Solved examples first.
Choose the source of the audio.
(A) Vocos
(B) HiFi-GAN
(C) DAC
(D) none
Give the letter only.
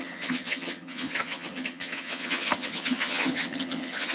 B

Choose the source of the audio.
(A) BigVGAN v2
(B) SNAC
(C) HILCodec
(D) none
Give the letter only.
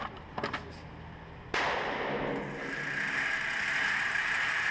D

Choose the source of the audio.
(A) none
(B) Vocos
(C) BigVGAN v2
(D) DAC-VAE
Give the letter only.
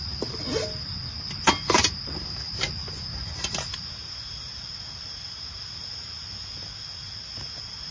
A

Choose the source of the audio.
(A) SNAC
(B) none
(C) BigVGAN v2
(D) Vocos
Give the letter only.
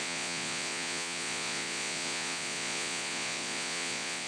D